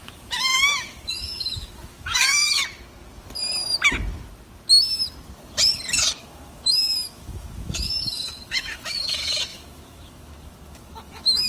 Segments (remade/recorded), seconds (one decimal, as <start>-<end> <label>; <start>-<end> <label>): 0.0-2.6 remade; 2.6-6.2 recorded; 6.2-11.5 remade